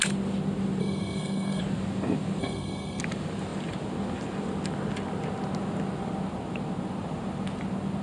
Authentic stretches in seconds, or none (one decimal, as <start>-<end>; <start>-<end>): 0.0-0.8; 1.6-2.4; 3.0-8.0